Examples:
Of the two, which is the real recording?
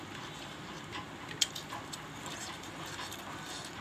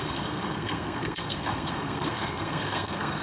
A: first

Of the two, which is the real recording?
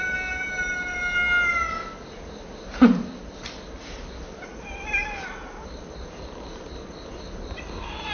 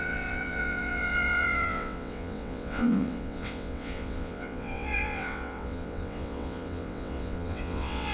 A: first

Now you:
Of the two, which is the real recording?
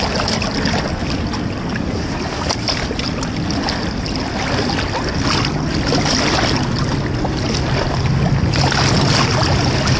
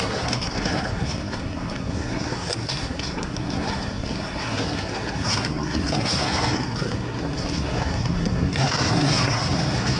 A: first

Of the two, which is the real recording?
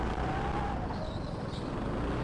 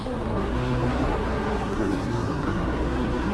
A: first